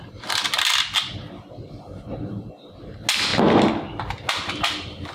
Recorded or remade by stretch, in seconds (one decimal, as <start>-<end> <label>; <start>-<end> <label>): 0.0-5.1 recorded